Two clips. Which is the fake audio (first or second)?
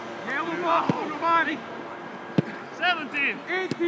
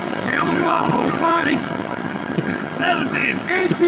second